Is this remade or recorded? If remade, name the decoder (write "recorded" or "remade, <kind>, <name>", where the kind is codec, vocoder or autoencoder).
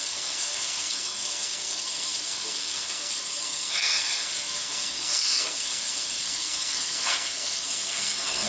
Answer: remade, codec, SNAC